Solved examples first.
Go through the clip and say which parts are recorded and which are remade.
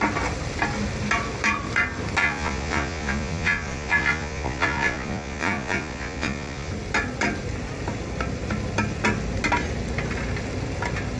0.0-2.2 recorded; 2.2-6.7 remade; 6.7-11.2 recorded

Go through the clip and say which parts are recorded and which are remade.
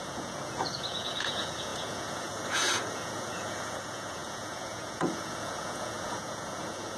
0.0-7.0 remade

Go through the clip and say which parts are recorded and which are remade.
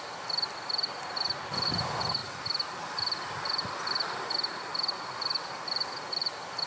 0.0-6.7 recorded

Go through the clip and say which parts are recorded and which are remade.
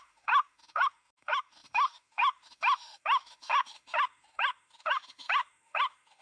0.0-6.2 remade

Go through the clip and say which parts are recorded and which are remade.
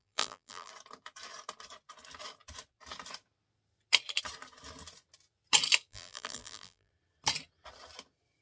0.0-0.7 remade; 0.7-5.9 recorded; 5.9-6.9 remade; 6.9-8.4 recorded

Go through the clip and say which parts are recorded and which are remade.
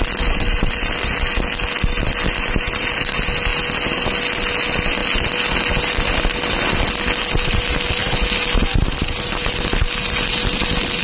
0.0-11.0 recorded